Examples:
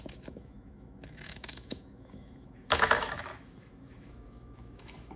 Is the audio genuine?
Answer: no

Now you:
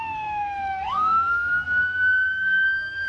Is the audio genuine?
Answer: no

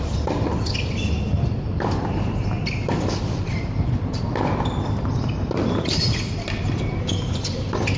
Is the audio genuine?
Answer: yes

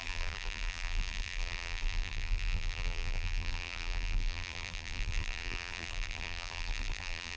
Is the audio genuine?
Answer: no